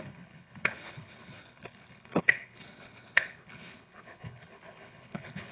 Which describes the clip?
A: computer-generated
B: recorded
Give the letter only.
A